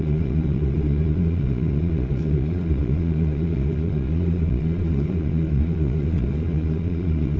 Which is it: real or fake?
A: fake